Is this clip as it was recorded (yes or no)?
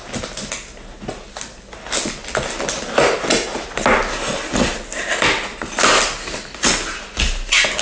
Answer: yes